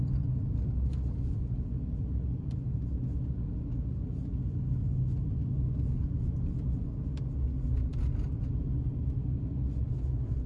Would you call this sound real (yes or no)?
yes